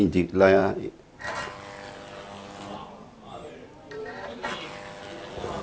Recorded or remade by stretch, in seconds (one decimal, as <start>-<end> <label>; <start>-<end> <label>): 0.0-5.6 recorded